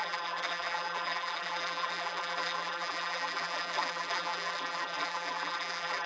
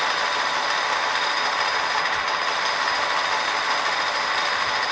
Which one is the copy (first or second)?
first